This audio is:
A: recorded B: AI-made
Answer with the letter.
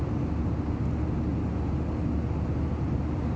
A